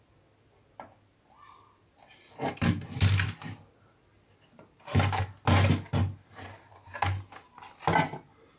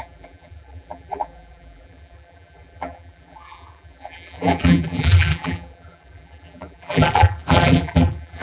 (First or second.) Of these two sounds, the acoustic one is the first